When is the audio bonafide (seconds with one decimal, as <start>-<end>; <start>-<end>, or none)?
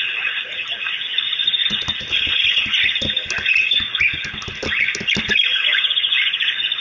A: 0.0-6.8